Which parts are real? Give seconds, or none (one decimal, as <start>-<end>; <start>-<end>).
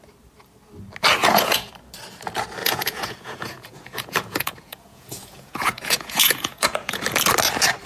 0.0-1.2; 1.7-2.6; 7.0-7.9